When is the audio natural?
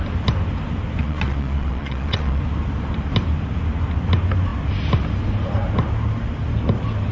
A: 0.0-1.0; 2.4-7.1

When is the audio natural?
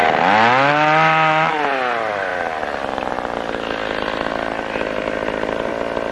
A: 0.0-6.1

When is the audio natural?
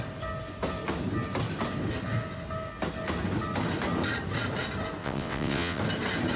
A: 0.0-5.0; 5.8-6.4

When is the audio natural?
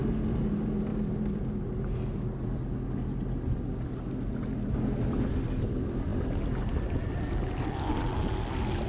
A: 0.0-8.9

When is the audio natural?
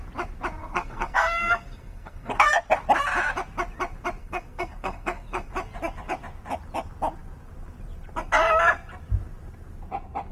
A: 0.0-0.6; 2.5-4.2; 5.5-10.3